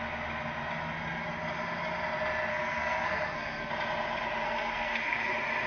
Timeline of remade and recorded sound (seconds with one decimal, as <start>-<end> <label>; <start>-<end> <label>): 0.0-2.5 recorded; 2.5-3.7 remade; 3.7-4.4 recorded; 4.4-5.3 remade; 5.3-5.7 recorded